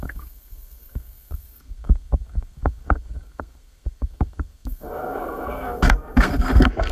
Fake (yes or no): yes